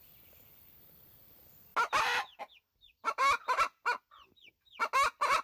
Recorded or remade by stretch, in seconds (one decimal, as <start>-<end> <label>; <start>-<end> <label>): 0.0-5.4 recorded